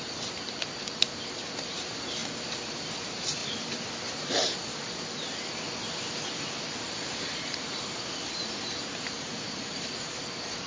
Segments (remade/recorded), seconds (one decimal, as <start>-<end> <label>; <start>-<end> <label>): 0.0-2.2 remade; 2.2-3.0 recorded; 3.0-3.4 remade; 3.4-6.8 recorded; 6.8-10.7 remade